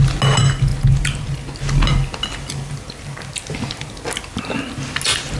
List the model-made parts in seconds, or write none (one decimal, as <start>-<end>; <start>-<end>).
none